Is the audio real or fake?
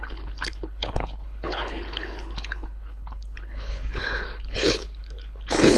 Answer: fake